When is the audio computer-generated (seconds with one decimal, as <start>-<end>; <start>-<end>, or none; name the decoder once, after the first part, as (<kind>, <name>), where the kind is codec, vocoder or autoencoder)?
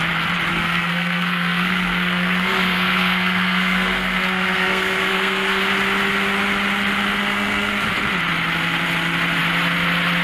0.5-5.6 (codec, SNAC); 7.2-7.7